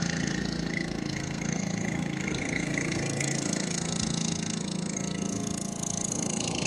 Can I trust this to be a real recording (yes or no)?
no